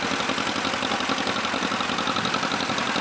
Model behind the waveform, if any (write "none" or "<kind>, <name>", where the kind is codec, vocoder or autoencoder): none